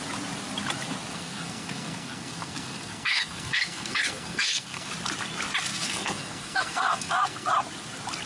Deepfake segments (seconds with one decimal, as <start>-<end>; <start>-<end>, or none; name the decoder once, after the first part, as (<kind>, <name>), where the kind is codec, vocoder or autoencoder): 1.1-4.9 (codec, SNAC); 5.7-7.5